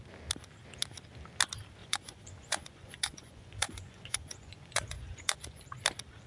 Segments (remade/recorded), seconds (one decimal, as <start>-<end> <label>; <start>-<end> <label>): 0.0-1.8 recorded; 1.8-5.6 remade; 5.6-6.3 recorded

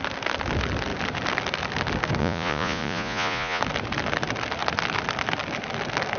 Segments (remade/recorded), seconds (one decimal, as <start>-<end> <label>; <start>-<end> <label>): 0.0-2.2 recorded; 2.2-3.6 remade; 3.6-6.2 recorded

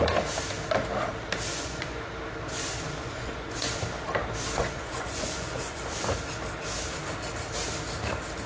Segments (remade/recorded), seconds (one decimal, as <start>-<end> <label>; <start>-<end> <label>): 0.0-1.5 recorded; 1.5-2.1 remade; 2.1-3.0 recorded; 3.0-3.7 remade; 3.7-4.6 recorded; 4.6-5.8 remade; 5.8-8.5 recorded

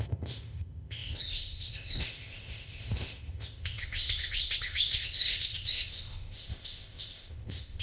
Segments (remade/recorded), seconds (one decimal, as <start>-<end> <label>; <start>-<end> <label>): 0.0-7.8 remade